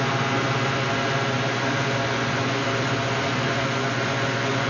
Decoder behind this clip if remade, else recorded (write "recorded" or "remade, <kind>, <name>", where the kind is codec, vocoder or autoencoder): remade, vocoder, Vocos